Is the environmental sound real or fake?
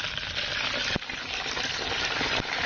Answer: real